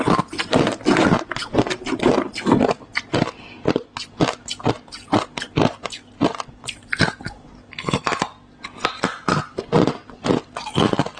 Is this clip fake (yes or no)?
no